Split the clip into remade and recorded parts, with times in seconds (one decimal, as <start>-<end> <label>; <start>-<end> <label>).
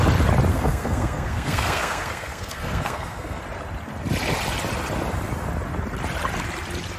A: 0.0-0.5 recorded; 0.5-3.4 remade; 3.4-7.0 recorded